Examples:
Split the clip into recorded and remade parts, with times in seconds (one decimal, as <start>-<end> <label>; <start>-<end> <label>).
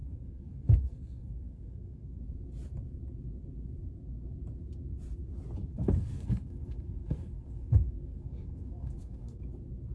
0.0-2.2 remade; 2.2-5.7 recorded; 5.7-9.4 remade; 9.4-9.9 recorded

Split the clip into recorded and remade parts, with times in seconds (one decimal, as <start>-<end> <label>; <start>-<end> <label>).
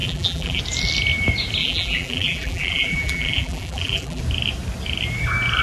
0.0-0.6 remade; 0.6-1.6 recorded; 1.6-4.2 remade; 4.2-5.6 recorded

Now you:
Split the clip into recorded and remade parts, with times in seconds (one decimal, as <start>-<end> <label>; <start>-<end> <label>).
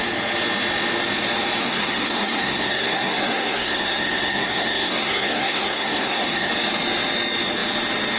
0.0-1.6 recorded; 1.6-6.5 remade; 6.5-8.2 recorded